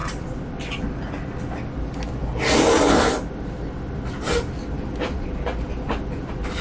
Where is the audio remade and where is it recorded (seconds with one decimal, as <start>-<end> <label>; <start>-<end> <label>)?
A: 0.0-6.6 recorded

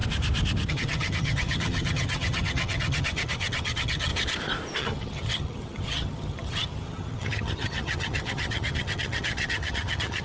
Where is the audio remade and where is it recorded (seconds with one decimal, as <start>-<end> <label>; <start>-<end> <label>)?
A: 0.0-0.7 recorded; 0.7-4.1 remade; 4.1-4.8 recorded; 4.8-10.2 remade

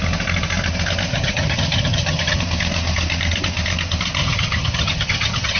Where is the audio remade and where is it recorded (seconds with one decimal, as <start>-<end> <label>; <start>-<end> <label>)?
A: 0.0-1.1 recorded; 1.1-2.4 remade; 2.4-4.2 recorded; 4.2-5.6 remade

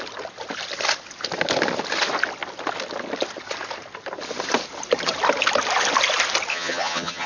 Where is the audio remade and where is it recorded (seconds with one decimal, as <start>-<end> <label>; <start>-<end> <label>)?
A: 0.0-6.5 recorded; 6.5-7.3 remade

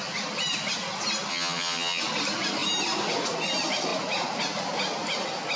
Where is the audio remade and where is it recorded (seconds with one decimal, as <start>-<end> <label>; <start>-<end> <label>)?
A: 0.0-1.3 recorded; 1.3-2.0 remade; 2.0-5.6 recorded

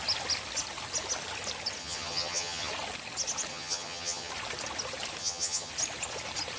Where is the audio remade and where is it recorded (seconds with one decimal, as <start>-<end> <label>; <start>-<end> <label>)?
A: 0.0-1.8 recorded; 1.8-2.7 remade; 2.7-3.5 recorded; 3.5-4.3 remade; 4.3-5.2 recorded; 5.2-5.7 remade; 5.7-6.6 recorded

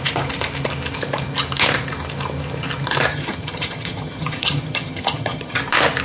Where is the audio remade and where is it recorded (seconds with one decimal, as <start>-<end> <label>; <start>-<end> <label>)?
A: 0.0-3.1 recorded; 3.1-5.6 remade; 5.6-6.0 recorded